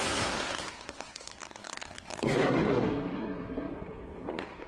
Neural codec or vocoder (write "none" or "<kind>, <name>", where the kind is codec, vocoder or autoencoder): codec, SNAC